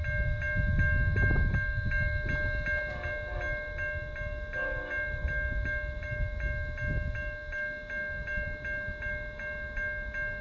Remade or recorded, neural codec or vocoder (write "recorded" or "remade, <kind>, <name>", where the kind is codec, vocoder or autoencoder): recorded